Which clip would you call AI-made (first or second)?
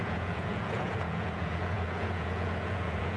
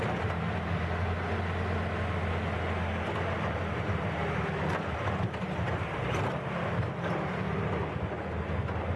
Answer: first